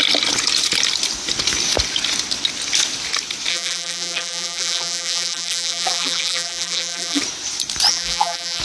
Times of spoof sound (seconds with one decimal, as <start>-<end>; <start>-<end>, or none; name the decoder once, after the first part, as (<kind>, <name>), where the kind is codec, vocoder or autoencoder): 3.5-7.2 (vocoder, BigVGAN v2); 7.9-8.6